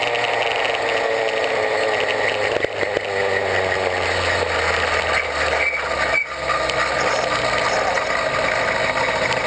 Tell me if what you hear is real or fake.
real